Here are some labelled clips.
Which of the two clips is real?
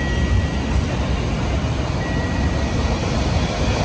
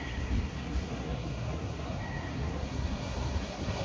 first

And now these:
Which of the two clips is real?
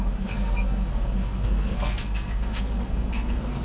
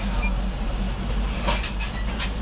second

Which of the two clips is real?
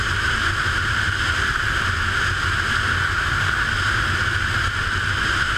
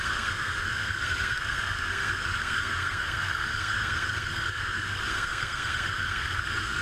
first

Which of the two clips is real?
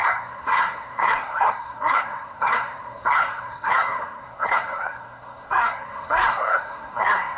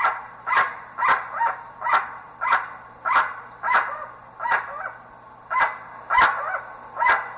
second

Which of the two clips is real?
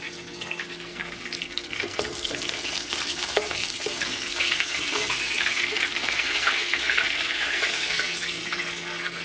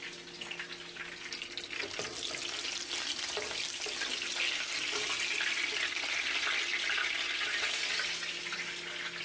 second